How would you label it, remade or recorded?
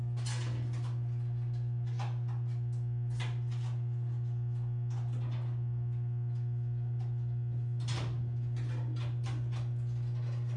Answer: recorded